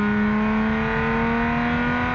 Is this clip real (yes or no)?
yes